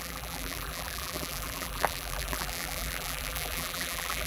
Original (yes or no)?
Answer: no